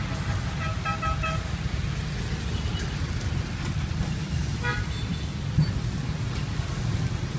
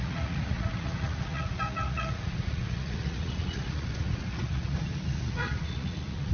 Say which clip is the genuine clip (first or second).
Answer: first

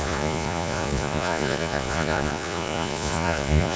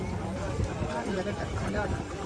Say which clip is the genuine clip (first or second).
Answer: second